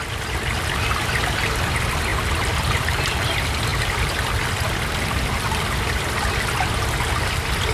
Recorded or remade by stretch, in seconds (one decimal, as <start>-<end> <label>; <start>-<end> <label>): 0.0-7.7 recorded